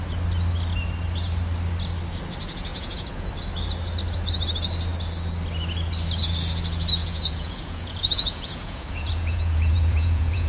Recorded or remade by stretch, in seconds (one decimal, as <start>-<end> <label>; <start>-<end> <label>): 0.0-2.7 recorded; 2.7-3.3 remade; 3.3-7.0 recorded; 7.0-10.5 remade